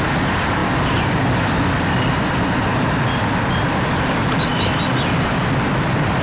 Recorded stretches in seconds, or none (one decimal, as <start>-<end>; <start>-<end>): 0.0-6.2